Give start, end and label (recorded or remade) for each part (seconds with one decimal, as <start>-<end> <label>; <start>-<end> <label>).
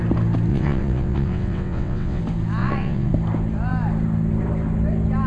0.0-0.5 recorded; 0.5-2.2 remade; 2.2-2.6 recorded; 2.6-3.1 remade; 3.1-5.3 recorded